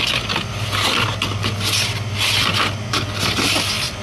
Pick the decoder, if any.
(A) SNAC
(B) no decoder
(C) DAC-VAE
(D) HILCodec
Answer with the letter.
B